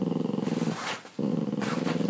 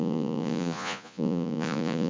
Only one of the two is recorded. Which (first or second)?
first